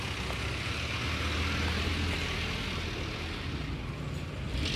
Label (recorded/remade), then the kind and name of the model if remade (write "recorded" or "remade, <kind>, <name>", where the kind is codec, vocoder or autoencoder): recorded